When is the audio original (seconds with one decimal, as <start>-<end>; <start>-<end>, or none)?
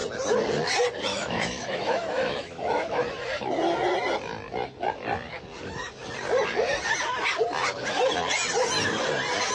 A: 0.0-1.1; 3.0-9.5